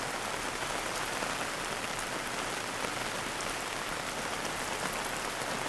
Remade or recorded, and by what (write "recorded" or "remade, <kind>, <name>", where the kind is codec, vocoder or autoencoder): recorded